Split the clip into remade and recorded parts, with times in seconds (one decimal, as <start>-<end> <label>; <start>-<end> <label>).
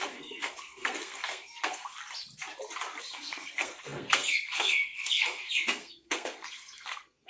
0.0-2.0 remade; 2.0-3.0 recorded; 3.0-7.3 remade